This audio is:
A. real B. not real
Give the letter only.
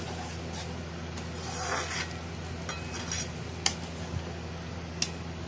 A